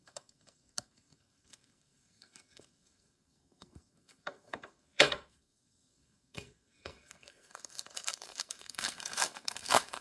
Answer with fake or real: fake